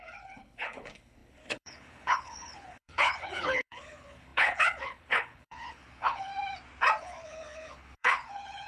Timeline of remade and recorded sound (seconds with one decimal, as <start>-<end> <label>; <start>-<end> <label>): 0.0-6.3 remade; 6.3-7.0 recorded; 7.0-8.7 remade